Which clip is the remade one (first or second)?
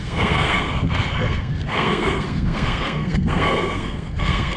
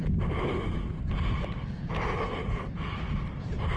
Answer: first